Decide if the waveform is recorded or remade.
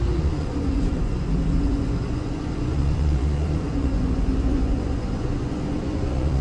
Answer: remade